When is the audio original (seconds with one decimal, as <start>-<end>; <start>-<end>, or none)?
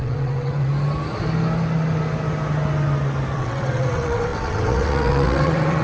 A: 0.7-3.3